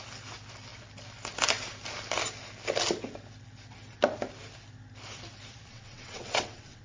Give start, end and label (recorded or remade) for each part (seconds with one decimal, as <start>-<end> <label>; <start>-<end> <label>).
0.0-5.7 recorded; 5.7-6.8 remade